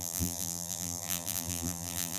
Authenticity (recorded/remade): remade